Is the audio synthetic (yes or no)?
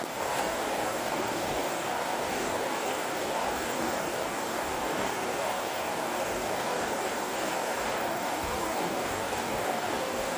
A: yes